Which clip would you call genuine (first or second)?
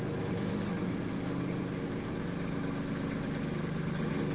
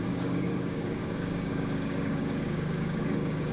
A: first